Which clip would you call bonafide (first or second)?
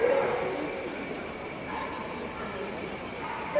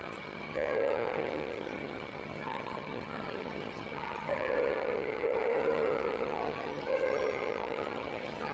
first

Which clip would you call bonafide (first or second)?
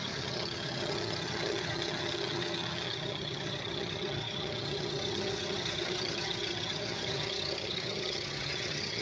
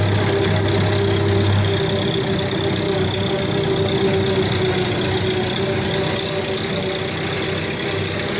second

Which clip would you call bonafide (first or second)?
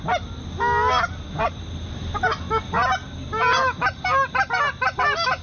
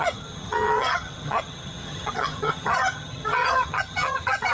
first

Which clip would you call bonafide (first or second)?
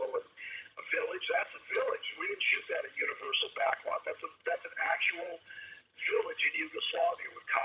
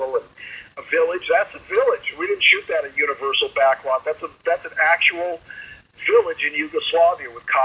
second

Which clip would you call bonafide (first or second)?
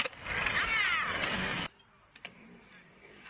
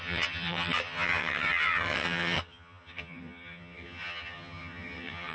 first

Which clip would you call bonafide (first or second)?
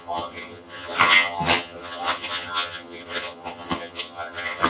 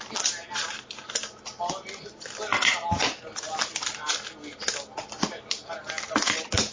second